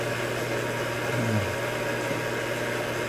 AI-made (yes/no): no